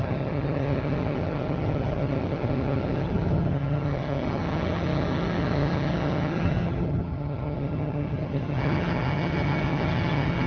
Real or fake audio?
fake